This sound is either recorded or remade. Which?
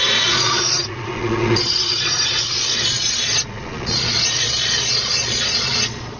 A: remade